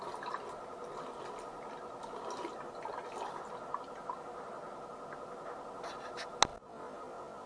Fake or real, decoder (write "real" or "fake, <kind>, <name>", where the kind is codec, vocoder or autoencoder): real